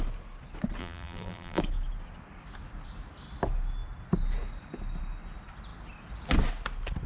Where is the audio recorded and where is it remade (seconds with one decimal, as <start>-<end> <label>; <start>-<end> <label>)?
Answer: 0.0-0.8 recorded; 0.8-1.6 remade; 1.6-7.1 recorded